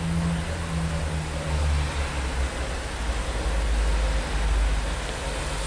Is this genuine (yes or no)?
yes